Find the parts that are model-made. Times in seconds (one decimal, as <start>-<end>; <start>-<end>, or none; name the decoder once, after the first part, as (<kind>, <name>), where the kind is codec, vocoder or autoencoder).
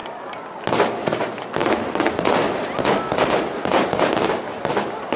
0.0-0.6 (vocoder, BigVGAN v2); 1.6-4.7